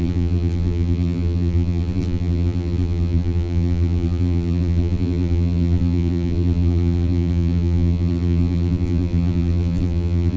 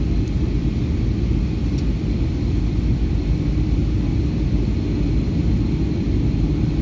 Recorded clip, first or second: second